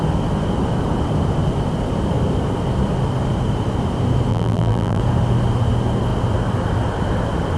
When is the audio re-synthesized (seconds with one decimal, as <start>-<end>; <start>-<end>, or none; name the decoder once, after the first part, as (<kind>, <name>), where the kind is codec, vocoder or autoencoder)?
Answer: 4.3-5.0 (vocoder, BigVGAN v2)